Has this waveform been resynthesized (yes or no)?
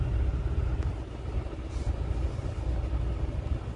no